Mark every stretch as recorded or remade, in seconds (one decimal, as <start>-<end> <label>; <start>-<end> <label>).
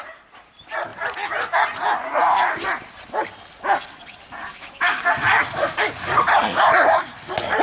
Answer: 0.0-4.5 recorded; 4.5-5.0 remade; 5.0-7.6 recorded